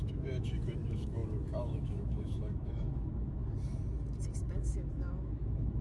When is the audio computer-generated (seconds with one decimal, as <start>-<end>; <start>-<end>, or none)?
0.0-3.4; 4.6-5.8